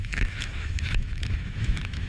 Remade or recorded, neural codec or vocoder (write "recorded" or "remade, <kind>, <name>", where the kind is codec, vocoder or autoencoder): remade, autoencoder, DAC-VAE